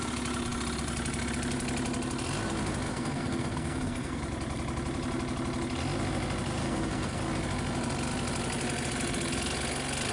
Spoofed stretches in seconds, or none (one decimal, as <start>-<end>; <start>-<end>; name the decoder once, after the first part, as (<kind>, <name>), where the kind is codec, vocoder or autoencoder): 2.9-4.2 (codec, SNAC); 6.6-7.2